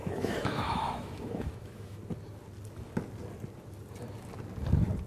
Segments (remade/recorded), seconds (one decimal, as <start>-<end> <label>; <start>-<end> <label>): 0.0-2.0 remade; 2.0-5.1 recorded